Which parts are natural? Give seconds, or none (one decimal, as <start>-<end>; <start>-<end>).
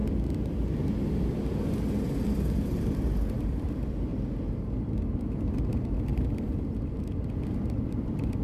0.0-3.4; 4.1-5.2; 6.1-7.0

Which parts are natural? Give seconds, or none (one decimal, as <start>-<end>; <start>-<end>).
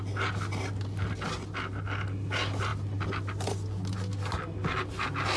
0.0-5.4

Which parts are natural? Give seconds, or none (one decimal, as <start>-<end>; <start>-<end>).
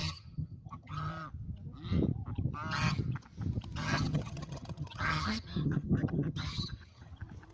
1.1-3.8; 7.1-7.5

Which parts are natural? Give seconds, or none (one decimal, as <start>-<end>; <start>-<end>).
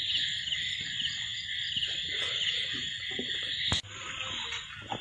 0.0-5.0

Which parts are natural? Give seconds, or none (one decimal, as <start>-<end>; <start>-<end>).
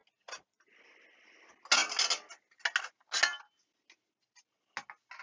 0.0-5.2